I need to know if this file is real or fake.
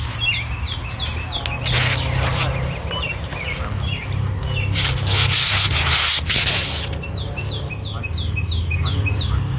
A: real